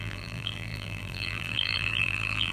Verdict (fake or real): fake